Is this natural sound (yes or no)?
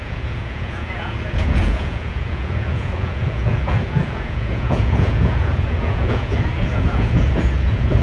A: no